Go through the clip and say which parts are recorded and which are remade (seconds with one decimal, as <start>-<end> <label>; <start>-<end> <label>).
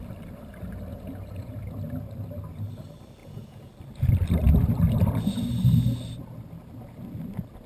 0.0-0.9 recorded; 0.9-1.6 remade; 1.6-3.2 recorded; 3.2-3.7 remade; 3.7-7.7 recorded